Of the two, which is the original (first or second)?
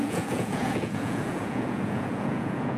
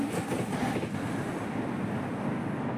second